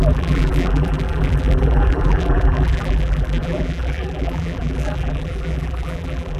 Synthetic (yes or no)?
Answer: yes